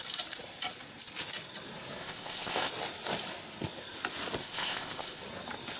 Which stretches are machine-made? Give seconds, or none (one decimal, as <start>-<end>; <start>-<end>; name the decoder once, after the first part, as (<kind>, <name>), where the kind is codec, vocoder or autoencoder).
2.0-2.7 (codec, ZipCodec); 4.4-5.2